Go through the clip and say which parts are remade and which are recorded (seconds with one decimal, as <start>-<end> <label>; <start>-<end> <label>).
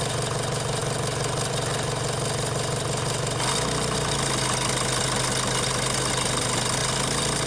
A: 0.0-7.5 recorded